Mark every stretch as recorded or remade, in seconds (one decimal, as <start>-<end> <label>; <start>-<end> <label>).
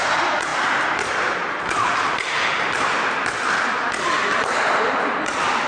0.0-5.7 recorded